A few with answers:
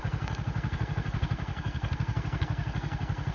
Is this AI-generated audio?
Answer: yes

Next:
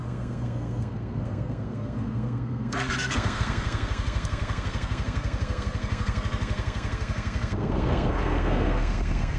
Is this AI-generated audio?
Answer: yes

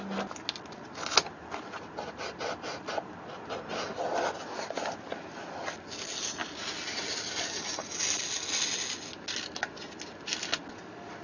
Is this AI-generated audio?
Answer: no